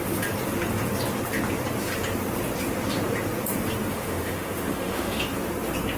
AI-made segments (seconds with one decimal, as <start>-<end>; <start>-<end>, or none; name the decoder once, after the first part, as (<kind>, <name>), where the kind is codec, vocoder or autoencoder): 3.9-5.2 (autoencoder, DAC-VAE)

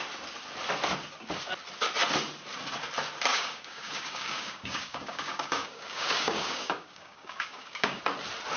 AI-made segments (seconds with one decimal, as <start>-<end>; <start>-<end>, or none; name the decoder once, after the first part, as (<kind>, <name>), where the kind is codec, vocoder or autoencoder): 3.3-8.0 (codec, DAC)